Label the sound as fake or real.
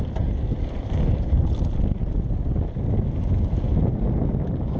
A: real